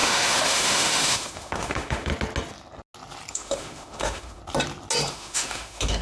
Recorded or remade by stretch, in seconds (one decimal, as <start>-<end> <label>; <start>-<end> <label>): 0.0-2.1 remade; 2.1-3.3 recorded; 3.3-4.4 remade; 4.4-5.1 recorded; 5.1-6.0 remade